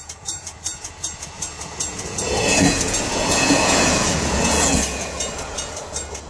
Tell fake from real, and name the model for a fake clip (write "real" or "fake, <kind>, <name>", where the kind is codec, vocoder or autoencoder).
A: fake, vocoder, Vocos